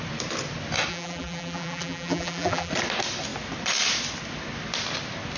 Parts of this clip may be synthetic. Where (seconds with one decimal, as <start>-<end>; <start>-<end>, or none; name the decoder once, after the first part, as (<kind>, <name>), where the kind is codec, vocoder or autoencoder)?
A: 0.9-2.7 (vocoder, BigVGAN v2)